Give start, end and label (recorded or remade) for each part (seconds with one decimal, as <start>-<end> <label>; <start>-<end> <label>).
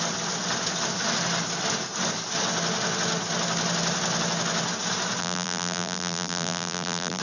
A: 0.0-5.2 recorded; 5.2-7.2 remade